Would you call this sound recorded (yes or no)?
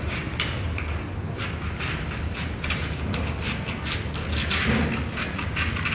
yes